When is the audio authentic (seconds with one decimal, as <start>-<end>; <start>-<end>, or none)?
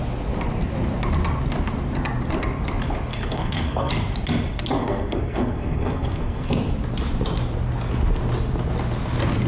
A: 0.0-3.1; 3.9-4.8; 6.5-9.5